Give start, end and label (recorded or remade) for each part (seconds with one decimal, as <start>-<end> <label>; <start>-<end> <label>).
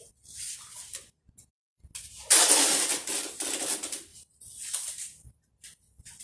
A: 0.0-6.2 recorded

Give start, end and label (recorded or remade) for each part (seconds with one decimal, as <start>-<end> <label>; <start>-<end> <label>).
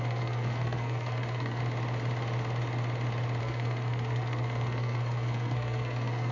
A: 0.0-1.6 remade; 1.6-3.4 recorded; 3.4-6.3 remade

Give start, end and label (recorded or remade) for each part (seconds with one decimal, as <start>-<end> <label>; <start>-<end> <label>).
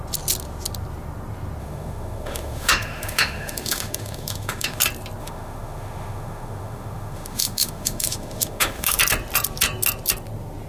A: 0.0-1.6 recorded; 1.6-4.8 remade; 4.8-5.2 recorded; 5.2-9.0 remade; 9.0-10.7 recorded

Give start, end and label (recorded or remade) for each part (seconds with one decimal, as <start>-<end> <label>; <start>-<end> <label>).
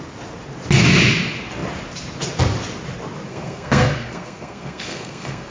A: 0.0-3.3 recorded; 3.3-5.5 remade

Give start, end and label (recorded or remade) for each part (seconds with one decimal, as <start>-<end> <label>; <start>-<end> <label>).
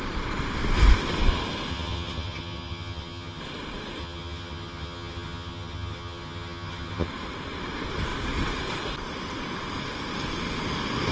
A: 0.0-1.7 recorded; 1.7-3.4 remade; 3.4-4.0 recorded; 4.0-7.1 remade; 7.1-11.1 recorded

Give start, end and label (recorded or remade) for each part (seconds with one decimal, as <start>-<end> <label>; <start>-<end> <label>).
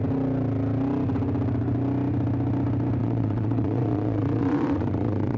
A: 0.0-3.0 recorded; 3.0-5.4 remade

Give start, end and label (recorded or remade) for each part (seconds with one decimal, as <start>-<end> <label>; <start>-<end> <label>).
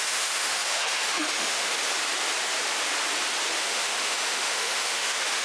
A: 0.0-1.8 remade; 1.8-3.6 recorded; 3.6-5.4 remade